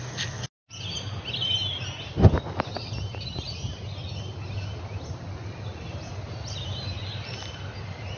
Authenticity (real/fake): real